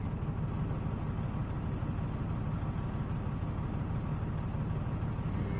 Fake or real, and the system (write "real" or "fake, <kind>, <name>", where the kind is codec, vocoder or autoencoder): real